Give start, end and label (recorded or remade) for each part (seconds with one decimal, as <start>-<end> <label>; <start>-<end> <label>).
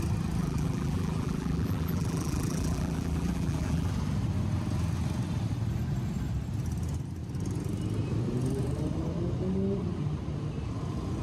0.0-0.4 recorded; 0.4-3.9 remade; 3.9-11.2 recorded